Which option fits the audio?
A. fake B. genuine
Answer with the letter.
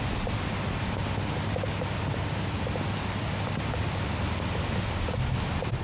B